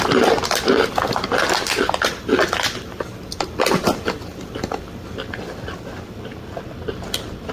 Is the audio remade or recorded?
recorded